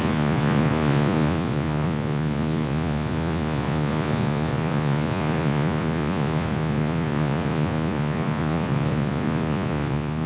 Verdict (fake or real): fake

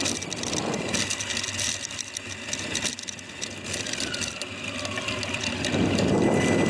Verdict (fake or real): real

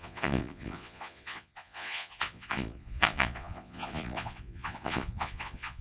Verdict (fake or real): fake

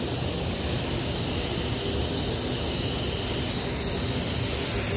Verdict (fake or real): real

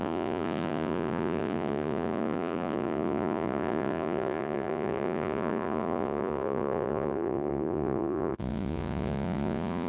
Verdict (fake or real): fake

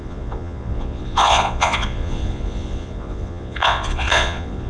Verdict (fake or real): fake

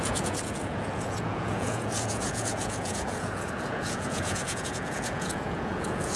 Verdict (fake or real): fake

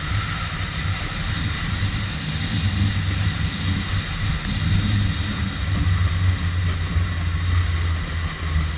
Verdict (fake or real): real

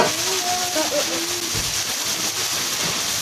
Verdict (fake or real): real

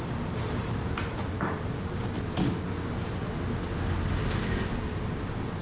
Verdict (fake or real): real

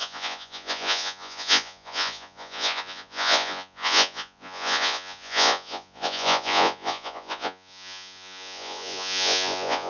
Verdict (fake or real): fake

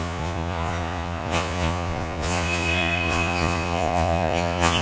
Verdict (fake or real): fake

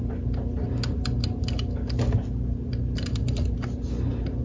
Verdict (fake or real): real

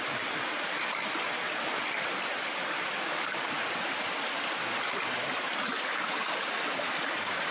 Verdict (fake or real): real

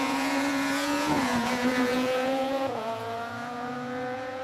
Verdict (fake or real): fake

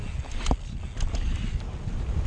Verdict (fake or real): real